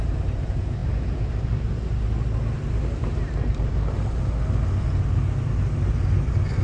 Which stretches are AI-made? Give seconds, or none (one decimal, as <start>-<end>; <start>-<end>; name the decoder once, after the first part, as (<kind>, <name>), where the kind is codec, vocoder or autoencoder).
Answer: none